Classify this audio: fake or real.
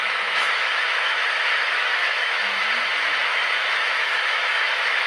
fake